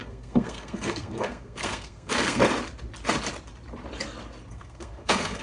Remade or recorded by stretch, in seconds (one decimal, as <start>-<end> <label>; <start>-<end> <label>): 0.0-2.4 remade; 2.4-4.5 recorded; 4.5-5.4 remade